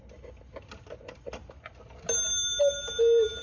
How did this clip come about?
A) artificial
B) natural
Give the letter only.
B